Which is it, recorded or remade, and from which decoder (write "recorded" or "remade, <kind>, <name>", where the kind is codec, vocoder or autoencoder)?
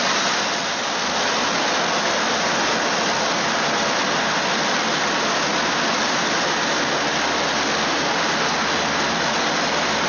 recorded